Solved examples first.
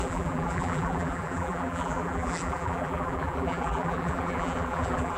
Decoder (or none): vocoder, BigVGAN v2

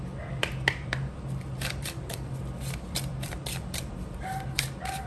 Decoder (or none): vocoder, BigVGAN v2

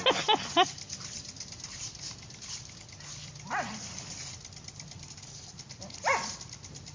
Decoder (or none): none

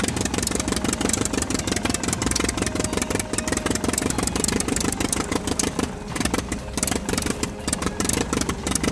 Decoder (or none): vocoder, BigVGAN v2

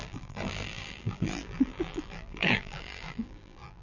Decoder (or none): vocoder, BigVGAN v2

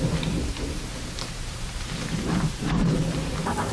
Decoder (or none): vocoder, BigVGAN v2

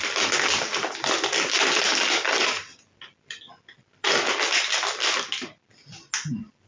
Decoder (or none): none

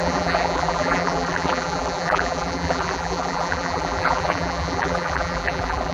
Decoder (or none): vocoder, BigVGAN v2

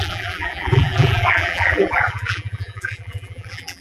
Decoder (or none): vocoder, BigVGAN v2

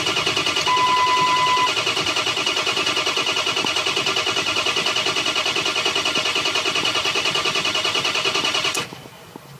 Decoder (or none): none